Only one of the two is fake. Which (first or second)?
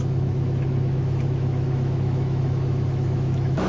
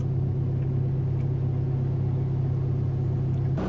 first